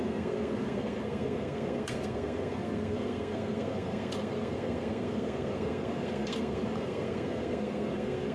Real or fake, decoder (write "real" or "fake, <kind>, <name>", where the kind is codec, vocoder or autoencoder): fake, codec, SNAC